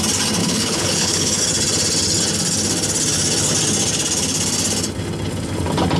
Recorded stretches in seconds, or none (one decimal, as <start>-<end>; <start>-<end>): 0.0-0.4; 1.4-6.0